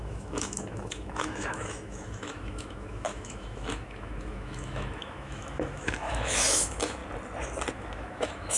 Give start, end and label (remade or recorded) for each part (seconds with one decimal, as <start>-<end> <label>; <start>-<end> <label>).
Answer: 0.0-7.0 remade; 7.0-7.7 recorded; 7.7-8.6 remade